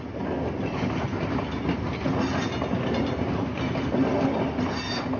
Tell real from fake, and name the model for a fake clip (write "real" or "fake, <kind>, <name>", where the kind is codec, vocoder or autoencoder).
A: real